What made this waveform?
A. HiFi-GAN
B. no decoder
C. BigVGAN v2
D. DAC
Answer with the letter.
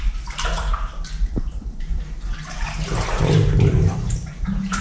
C